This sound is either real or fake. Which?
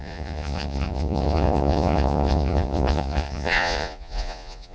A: fake